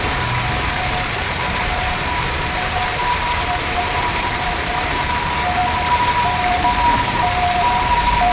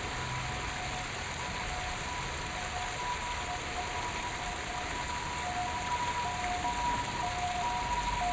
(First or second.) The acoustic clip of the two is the second